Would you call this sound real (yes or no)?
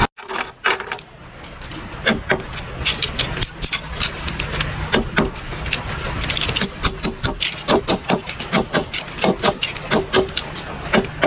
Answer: yes